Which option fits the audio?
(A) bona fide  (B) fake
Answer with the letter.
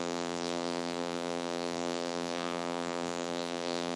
B